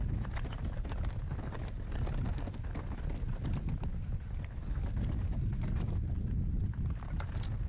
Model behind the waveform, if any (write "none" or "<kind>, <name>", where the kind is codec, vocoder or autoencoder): none